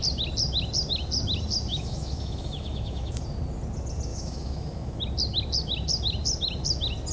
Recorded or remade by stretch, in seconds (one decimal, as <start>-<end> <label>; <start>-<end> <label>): 0.0-1.7 recorded; 1.7-3.1 remade; 3.1-4.1 recorded; 4.1-5.0 remade; 5.0-7.1 recorded